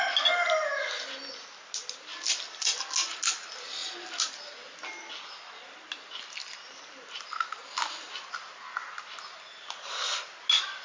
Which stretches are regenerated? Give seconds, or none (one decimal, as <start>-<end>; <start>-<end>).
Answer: none